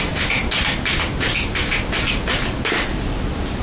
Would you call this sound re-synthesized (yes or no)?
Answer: no